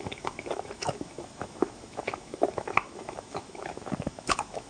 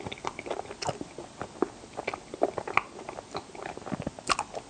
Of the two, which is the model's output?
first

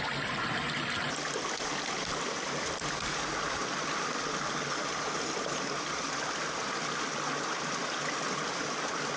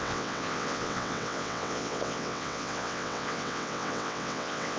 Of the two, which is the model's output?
second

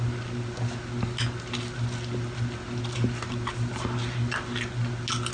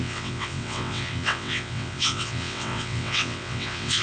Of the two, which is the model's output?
second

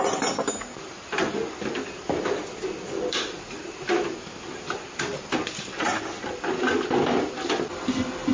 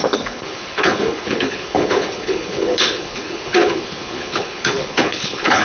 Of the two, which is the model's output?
second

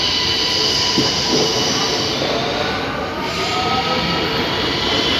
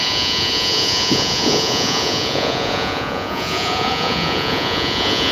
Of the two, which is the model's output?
second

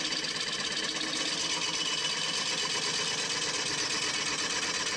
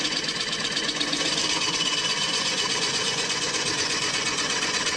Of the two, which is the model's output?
second